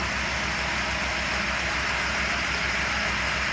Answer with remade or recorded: recorded